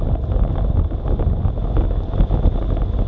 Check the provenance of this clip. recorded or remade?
recorded